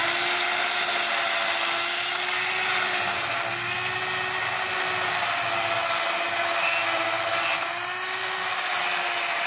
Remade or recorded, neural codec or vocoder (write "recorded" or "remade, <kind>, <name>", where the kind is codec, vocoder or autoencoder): recorded